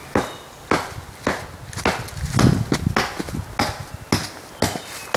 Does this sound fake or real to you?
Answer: real